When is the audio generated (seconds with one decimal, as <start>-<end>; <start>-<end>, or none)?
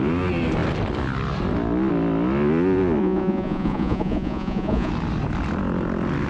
3.0-4.9